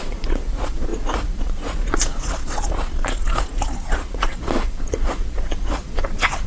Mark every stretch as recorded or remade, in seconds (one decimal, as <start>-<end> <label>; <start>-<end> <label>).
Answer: 0.0-6.5 remade